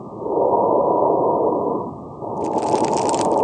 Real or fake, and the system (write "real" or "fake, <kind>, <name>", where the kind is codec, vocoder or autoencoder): real